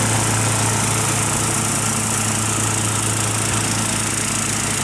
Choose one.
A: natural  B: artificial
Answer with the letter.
A